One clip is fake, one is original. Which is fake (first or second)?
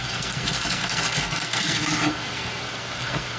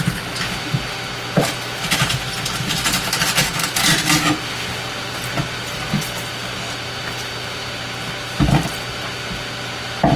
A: first